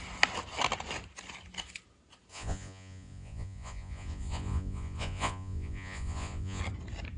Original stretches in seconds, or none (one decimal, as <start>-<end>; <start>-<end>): 0.0-2.3; 6.6-7.2